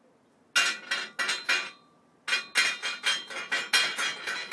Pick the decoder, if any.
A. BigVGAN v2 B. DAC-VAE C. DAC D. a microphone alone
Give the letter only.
D